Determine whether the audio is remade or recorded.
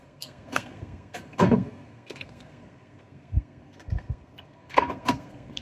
remade